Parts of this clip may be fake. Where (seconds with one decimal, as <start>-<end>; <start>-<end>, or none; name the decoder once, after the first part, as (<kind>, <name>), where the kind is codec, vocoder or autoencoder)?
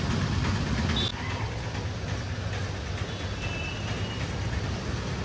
none